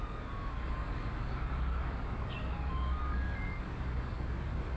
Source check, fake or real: fake